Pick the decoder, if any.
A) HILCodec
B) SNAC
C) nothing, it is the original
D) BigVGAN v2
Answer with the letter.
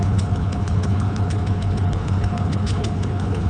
A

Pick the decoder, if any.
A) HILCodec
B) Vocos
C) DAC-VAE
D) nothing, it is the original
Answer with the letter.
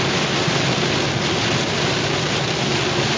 D